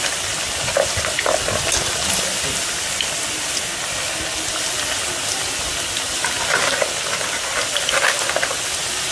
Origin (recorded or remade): recorded